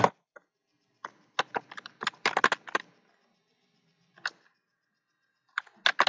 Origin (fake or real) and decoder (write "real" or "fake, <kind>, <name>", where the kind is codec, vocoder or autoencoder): real